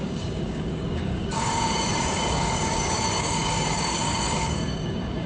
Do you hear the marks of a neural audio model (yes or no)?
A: yes